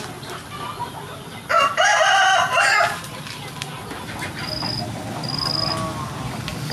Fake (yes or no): no